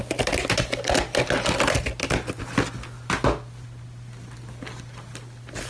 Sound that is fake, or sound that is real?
real